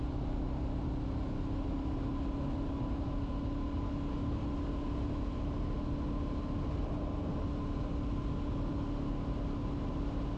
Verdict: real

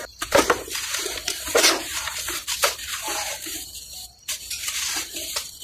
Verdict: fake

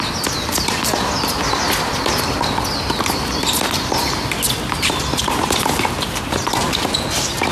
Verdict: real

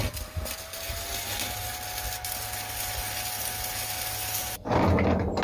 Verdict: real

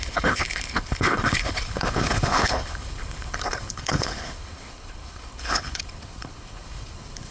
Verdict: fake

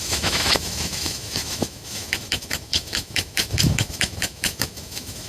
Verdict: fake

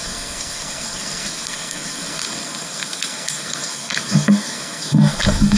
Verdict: fake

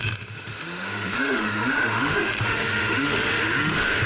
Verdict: fake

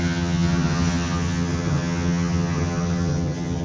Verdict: fake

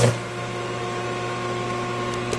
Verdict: real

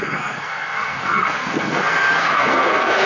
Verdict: fake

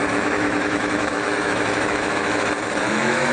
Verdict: fake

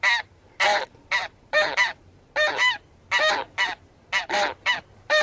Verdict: fake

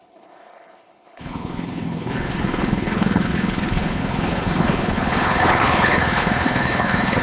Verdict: fake